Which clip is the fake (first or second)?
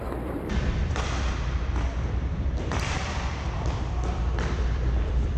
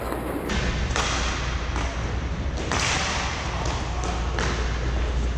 first